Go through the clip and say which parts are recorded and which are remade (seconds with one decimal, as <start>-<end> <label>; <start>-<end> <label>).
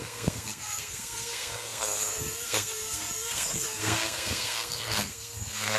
0.0-5.8 remade